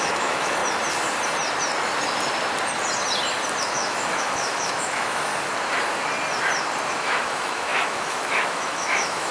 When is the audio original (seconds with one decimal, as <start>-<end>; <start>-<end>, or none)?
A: 0.6-3.6; 5.3-6.9